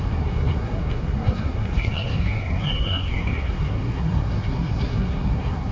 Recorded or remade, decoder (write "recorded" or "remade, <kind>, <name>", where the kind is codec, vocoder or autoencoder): remade, codec, SNAC